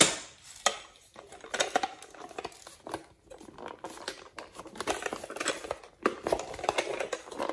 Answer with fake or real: real